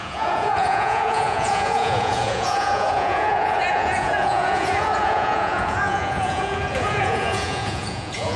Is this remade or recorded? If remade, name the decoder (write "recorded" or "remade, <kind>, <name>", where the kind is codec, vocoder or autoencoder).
remade, vocoder, Vocos